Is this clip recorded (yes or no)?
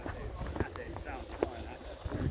yes